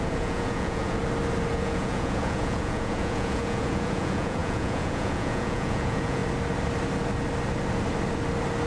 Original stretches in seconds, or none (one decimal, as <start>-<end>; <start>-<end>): 1.0-1.5; 6.2-8.7